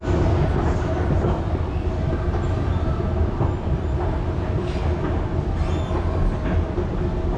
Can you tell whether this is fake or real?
real